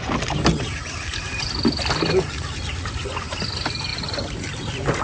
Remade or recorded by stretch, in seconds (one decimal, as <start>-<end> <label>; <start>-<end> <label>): 0.0-0.8 recorded; 0.8-2.1 remade; 2.1-3.9 recorded; 3.9-5.0 remade